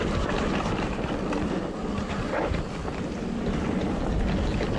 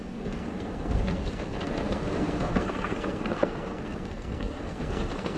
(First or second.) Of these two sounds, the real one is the first